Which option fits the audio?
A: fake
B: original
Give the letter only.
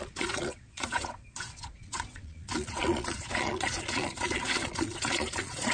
A